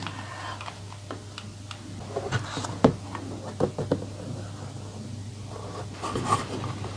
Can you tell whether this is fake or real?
real